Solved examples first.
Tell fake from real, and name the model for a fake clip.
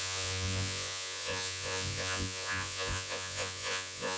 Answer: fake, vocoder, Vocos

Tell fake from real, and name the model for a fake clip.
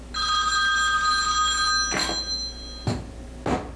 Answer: real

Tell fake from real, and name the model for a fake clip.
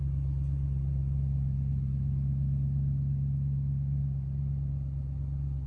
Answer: real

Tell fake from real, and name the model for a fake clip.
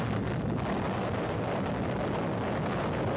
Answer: real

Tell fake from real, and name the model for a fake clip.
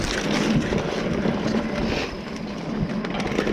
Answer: real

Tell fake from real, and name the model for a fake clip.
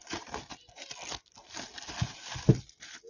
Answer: real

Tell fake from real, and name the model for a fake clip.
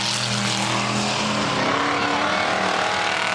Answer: real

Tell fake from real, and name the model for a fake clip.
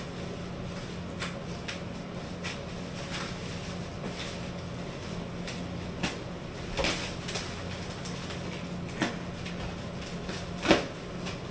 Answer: real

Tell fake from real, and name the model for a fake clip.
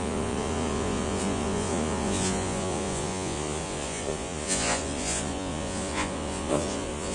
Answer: fake, vocoder, Vocos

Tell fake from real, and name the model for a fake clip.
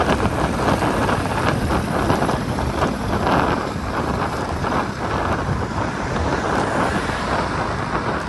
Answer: real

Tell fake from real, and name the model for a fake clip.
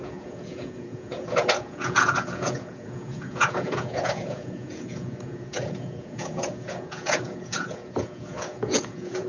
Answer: fake, vocoder, Vocos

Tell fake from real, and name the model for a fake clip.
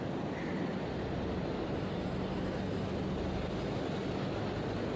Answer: real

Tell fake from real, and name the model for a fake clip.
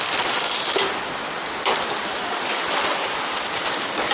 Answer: real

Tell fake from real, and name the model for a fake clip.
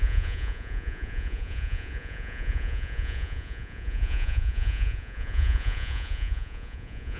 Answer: fake, vocoder, Vocos